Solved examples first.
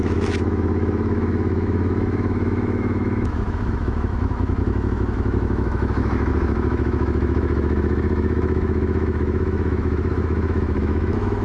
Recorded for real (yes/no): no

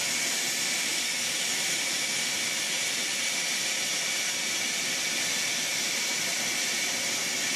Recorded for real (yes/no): yes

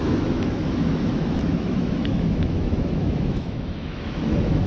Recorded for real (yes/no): no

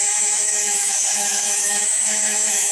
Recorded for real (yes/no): no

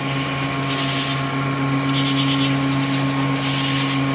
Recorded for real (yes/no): yes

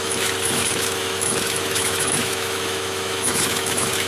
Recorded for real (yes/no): no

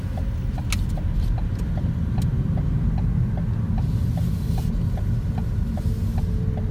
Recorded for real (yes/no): yes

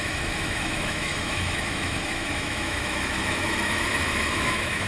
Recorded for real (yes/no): no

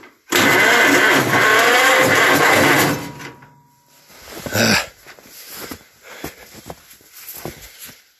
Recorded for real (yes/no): yes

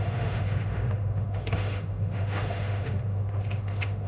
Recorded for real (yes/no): no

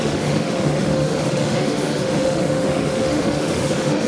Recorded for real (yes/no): no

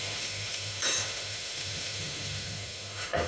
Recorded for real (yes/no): no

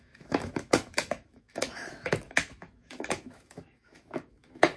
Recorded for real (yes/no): no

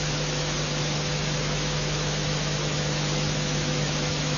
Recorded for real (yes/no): no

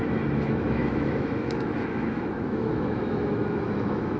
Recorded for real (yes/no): no